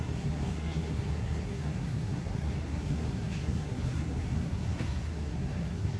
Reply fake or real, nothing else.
fake